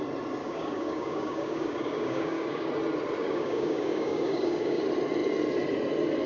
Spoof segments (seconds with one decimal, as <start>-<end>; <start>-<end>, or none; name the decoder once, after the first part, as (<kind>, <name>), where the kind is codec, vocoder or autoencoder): 0.4-2.7 (codec, DAC); 3.2-4.8